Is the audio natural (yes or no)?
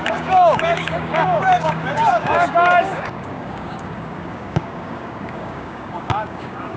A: no